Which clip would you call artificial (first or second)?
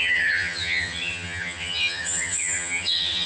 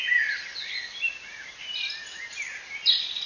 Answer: first